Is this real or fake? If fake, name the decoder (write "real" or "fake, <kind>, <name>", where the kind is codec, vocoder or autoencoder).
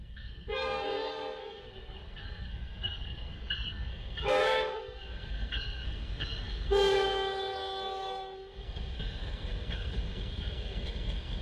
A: fake, codec, SNAC